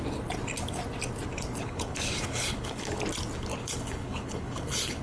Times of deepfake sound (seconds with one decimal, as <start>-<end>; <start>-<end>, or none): 1.6-3.0; 3.5-5.0